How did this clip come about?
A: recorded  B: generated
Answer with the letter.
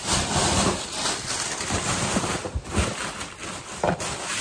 B